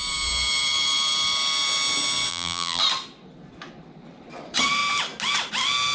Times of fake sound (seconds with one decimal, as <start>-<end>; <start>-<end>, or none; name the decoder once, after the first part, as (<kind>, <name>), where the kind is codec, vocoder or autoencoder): 2.3-2.8 (vocoder, BigVGAN v2)